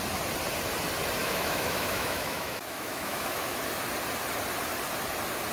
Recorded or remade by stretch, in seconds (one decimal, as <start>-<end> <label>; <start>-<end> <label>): 0.0-1.2 recorded; 1.2-3.6 remade; 3.6-5.5 recorded